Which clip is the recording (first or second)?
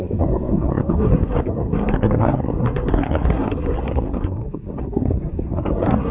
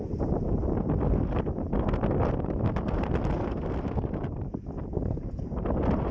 second